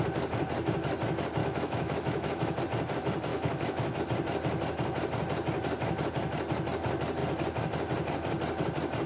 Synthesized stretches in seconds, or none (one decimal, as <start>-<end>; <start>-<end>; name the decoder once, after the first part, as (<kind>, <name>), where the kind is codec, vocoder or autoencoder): 1.4-2.6 (autoencoder, DAC-VAE); 3.3-4.0